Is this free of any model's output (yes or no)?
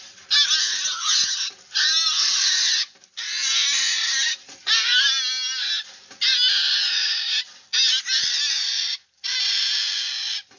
yes